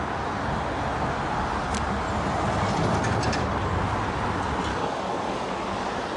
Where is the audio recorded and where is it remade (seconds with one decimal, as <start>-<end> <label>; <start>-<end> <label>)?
0.0-4.7 recorded; 4.7-5.6 remade; 5.6-6.2 recorded